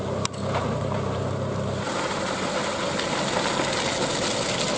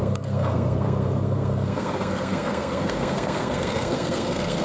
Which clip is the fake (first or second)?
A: second